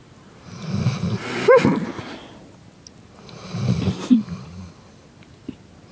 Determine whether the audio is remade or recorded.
recorded